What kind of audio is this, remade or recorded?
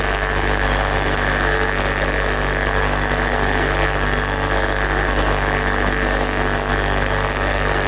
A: remade